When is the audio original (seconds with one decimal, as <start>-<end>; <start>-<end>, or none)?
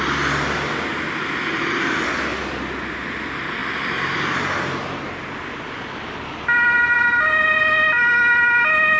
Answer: 0.0-9.0